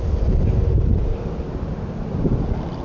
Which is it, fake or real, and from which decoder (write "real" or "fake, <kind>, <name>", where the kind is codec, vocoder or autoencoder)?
real